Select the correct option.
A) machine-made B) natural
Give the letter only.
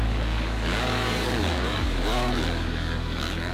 A